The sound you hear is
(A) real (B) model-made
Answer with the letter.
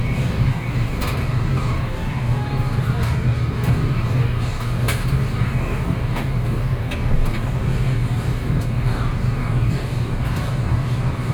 B